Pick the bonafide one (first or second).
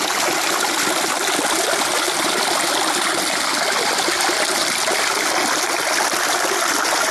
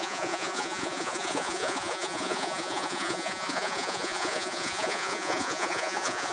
first